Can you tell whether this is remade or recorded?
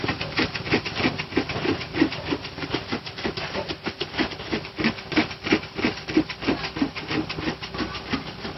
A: recorded